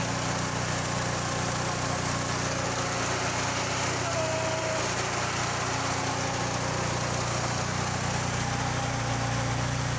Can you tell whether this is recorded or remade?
recorded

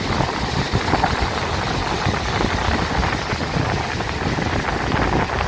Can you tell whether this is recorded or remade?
recorded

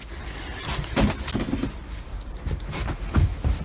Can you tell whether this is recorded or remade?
recorded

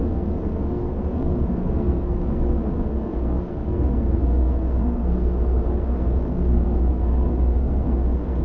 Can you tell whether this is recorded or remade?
remade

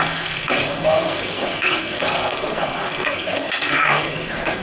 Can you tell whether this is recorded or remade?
remade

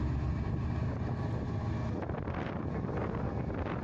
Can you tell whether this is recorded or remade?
recorded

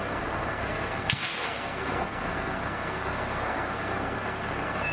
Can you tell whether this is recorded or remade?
remade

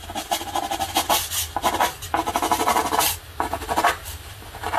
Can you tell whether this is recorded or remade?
recorded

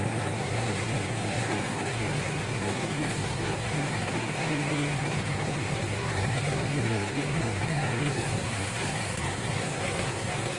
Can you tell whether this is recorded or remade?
remade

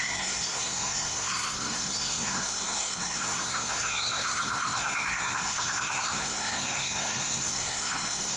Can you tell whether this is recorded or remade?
remade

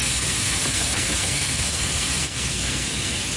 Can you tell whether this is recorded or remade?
remade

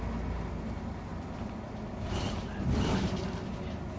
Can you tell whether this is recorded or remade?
recorded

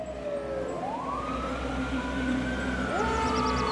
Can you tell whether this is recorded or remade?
recorded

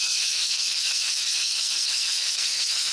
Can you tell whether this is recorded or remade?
remade